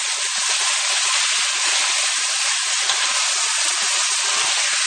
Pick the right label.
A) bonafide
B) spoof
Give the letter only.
A